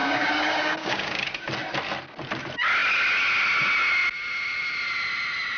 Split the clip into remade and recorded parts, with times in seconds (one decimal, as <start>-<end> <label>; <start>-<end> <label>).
0.0-1.3 remade; 1.3-5.6 recorded